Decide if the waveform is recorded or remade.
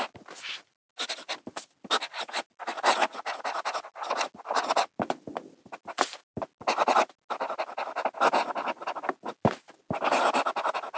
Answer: recorded